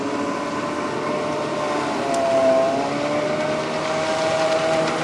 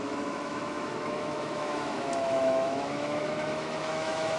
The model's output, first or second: second